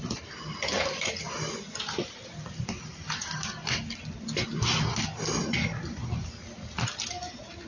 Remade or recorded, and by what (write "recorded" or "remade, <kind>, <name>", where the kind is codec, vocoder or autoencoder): recorded